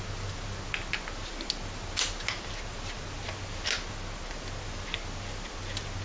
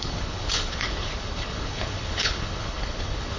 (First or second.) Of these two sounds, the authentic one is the first